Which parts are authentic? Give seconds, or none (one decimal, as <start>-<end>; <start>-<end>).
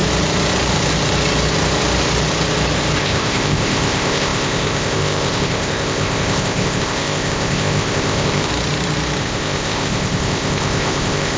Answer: 0.0-3.0; 8.5-9.2